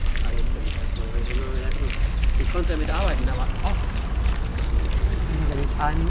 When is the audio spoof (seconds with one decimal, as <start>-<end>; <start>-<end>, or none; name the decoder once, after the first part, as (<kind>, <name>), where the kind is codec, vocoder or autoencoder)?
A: 4.5-5.5 (codec, DAC)